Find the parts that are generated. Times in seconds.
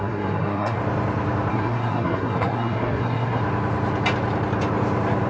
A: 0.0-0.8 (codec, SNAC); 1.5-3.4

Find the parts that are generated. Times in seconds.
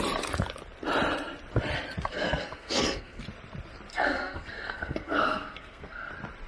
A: 2.1-3.2 (codec, SNAC); 3.9-6.1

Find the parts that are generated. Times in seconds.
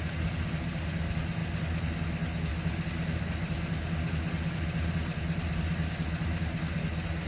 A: none